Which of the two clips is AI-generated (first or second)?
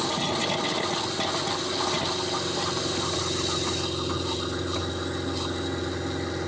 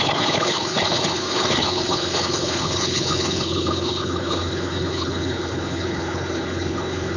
second